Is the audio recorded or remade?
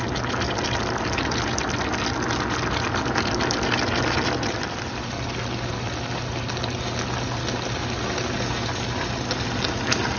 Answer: recorded